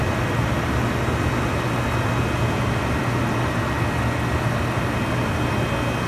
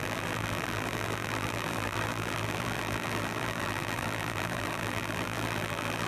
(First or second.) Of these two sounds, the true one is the first